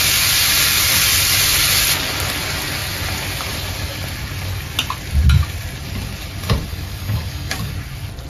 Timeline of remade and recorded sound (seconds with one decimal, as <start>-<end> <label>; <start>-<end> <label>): 0.0-6.7 recorded; 6.7-7.7 remade; 7.7-8.3 recorded